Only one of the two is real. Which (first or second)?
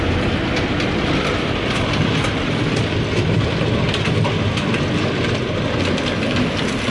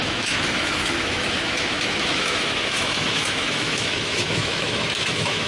first